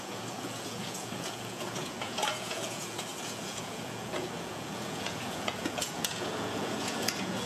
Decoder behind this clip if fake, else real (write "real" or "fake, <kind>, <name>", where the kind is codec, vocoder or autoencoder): fake, vocoder, Vocos